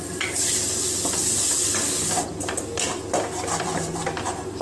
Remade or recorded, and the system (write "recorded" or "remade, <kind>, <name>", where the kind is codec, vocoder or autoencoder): remade, vocoder, BigVGAN v2